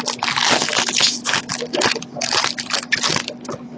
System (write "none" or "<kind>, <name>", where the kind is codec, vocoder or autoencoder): none